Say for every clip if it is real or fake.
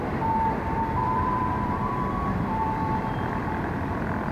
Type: fake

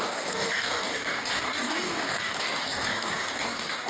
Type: fake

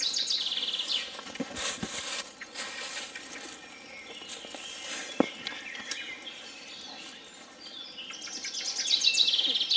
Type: real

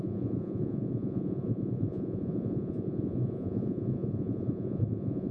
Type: fake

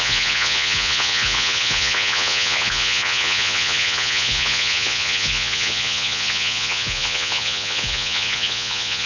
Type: fake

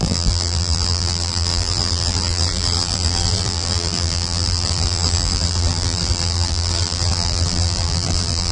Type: fake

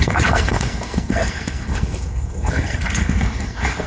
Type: fake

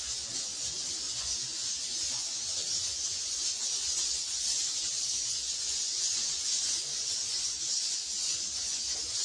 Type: fake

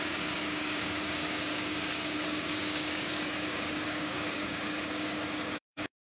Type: fake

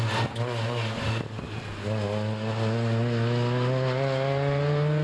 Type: real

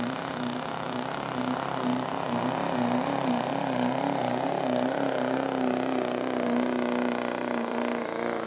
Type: fake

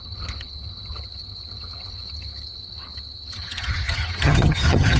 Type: fake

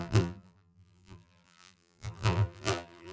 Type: fake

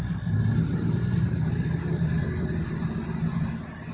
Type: real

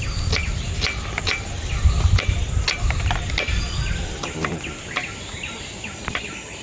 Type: real